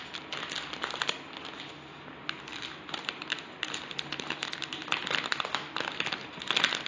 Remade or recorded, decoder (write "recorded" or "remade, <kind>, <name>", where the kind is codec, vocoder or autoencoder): recorded